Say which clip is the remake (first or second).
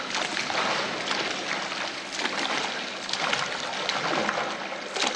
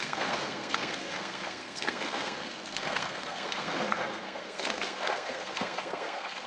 second